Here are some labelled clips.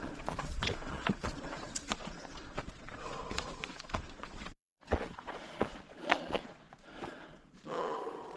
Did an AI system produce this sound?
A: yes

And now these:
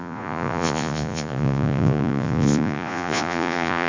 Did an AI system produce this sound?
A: yes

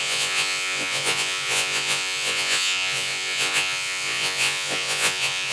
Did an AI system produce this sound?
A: yes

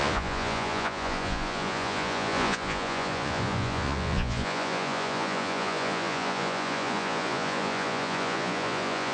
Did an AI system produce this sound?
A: yes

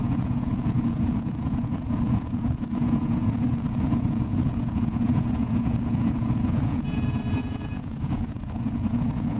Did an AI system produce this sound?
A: yes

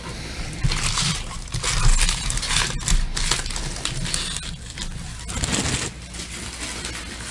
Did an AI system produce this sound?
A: no